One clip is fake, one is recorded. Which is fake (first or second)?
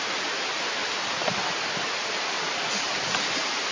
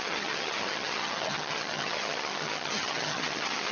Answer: second